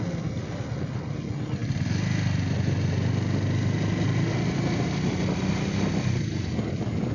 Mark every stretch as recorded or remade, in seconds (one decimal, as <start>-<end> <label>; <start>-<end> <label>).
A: 0.0-7.1 recorded